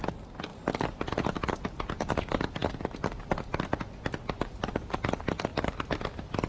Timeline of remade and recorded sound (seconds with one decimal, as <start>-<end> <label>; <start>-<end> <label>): 0.0-6.5 recorded